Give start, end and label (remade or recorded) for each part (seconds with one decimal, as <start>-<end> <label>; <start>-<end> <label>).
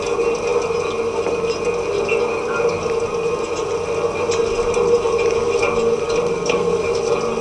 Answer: 0.0-6.3 recorded; 6.3-7.0 remade; 7.0-7.4 recorded